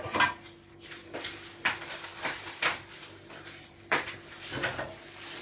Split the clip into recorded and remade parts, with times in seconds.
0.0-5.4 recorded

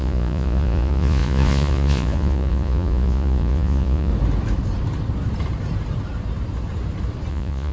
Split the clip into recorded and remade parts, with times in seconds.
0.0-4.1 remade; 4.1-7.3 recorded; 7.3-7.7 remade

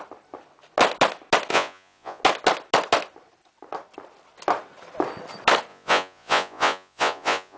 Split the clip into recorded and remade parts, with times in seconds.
0.0-1.5 recorded; 1.5-2.2 remade; 2.2-5.7 recorded; 5.7-7.6 remade

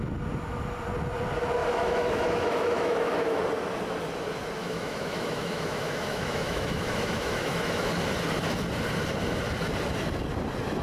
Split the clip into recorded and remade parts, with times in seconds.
0.0-1.6 recorded; 1.6-3.4 remade; 3.4-4.6 recorded; 4.6-7.9 remade; 7.9-10.8 recorded

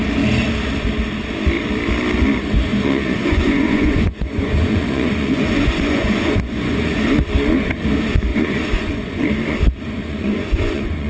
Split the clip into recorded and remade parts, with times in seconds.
0.0-2.7 recorded; 2.7-7.0 remade; 7.0-8.3 recorded; 8.3-9.3 remade; 9.3-10.0 recorded; 10.0-11.1 remade

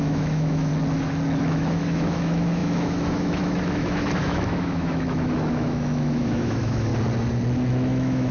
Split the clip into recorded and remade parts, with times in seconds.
0.0-0.7 remade; 0.7-1.4 recorded; 1.4-6.9 remade; 6.9-7.7 recorded; 7.7-8.3 remade